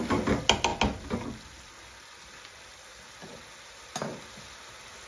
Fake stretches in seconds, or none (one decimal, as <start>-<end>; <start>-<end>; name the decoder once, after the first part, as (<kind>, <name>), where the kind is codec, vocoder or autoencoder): none